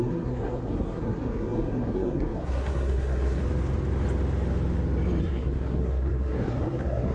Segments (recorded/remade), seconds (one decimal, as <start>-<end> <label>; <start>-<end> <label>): 0.0-3.4 remade; 3.4-5.2 recorded; 5.2-7.1 remade